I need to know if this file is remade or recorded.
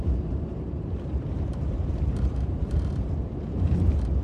remade